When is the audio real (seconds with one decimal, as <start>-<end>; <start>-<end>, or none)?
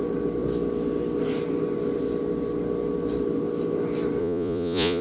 0.0-4.2